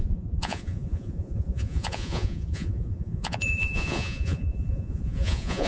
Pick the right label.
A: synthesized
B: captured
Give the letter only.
A